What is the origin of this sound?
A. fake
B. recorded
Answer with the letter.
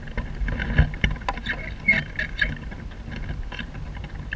B